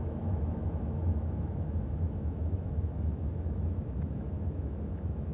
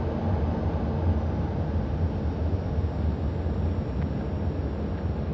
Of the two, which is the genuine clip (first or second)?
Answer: second